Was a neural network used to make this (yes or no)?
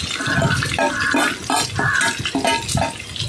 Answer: no